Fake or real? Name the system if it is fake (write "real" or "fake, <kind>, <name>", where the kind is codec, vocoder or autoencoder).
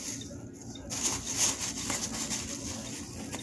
real